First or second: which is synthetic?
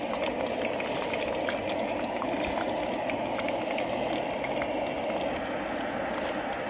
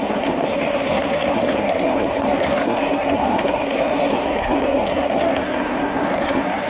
second